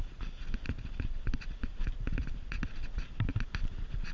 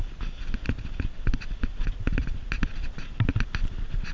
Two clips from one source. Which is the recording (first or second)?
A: second